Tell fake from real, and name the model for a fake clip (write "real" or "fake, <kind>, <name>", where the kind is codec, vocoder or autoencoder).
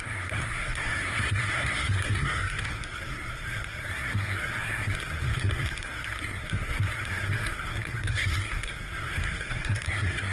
fake, codec, SNAC